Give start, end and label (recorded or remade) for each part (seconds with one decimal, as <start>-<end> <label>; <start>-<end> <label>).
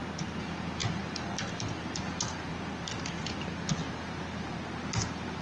0.0-5.4 recorded